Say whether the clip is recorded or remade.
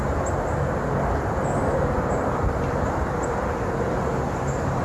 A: recorded